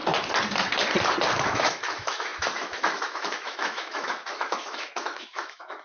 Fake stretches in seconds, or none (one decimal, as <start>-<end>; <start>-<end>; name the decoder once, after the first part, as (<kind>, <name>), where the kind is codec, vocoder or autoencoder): 1.3-5.8 (autoencoder, DAC-VAE)